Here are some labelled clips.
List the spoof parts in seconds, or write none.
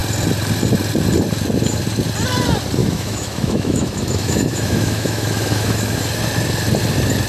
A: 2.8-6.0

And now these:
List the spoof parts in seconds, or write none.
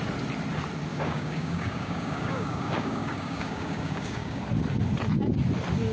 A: 0.9-4.4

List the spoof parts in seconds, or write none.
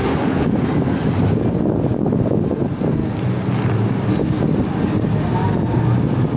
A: none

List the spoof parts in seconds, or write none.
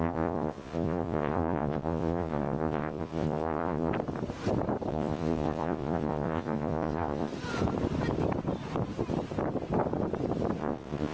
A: 0.0-3.9; 4.9-7.3; 10.6-11.1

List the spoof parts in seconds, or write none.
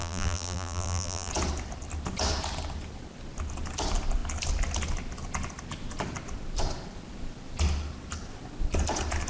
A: 0.0-1.3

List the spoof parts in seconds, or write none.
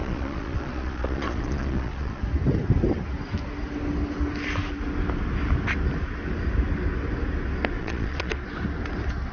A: 0.0-2.2; 7.8-8.3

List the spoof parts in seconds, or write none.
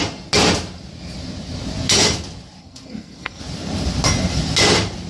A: 2.6-3.4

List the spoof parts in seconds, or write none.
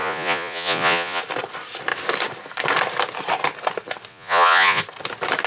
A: 0.0-1.2; 4.1-4.8